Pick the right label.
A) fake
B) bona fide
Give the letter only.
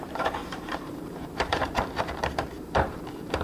A